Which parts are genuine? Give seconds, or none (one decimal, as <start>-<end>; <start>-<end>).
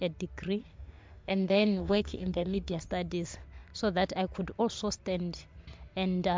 0.0-0.7; 2.8-6.4